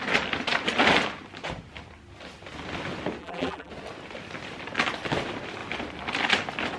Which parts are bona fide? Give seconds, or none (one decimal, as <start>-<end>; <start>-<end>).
0.0-3.2; 3.7-6.8

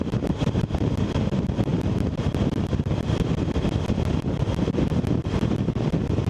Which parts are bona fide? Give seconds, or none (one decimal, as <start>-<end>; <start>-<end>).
0.0-6.3

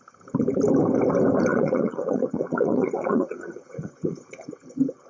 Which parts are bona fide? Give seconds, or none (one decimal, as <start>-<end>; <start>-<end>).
0.0-1.5; 4.6-5.1